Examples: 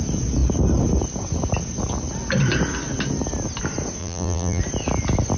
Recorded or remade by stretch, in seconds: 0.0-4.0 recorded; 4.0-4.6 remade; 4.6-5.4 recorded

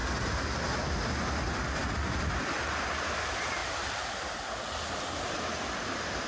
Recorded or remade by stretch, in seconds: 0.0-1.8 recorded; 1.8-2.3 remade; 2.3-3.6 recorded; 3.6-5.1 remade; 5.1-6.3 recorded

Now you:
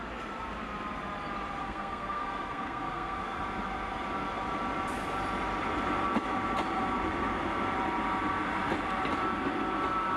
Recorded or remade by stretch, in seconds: 0.0-1.6 recorded; 1.6-3.4 remade; 3.4-10.2 recorded

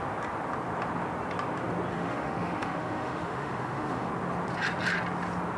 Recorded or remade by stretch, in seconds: 0.0-1.9 recorded; 1.9-4.1 remade; 4.1-5.6 recorded

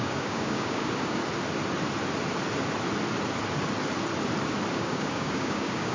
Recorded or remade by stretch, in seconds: 0.0-1.2 remade; 1.2-4.7 recorded; 4.7-5.9 remade

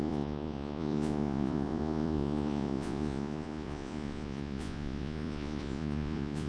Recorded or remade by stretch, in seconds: 0.0-6.5 remade

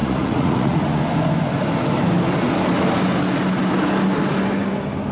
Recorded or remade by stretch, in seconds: 0.0-1.0 remade; 1.0-5.1 recorded

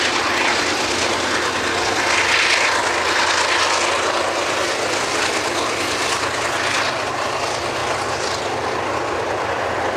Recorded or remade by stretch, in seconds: 0.0-10.0 recorded